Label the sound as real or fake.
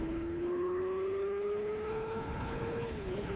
fake